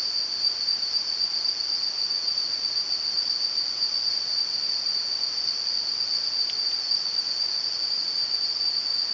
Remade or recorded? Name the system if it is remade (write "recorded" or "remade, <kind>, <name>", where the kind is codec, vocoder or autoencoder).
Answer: recorded